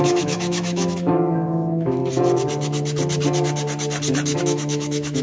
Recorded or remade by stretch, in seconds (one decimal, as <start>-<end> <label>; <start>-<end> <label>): 0.0-2.0 remade; 2.0-4.4 recorded; 4.4-5.2 remade